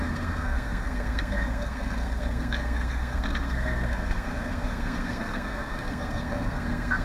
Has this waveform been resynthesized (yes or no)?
yes